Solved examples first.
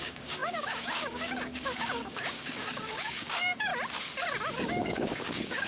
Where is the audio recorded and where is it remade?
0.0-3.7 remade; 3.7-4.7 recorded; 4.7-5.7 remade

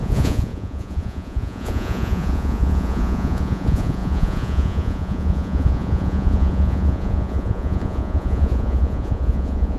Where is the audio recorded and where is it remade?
0.0-9.8 remade

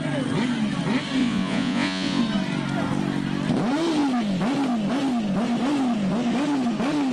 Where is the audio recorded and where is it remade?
0.0-1.2 recorded; 1.2-2.2 remade; 2.2-7.1 recorded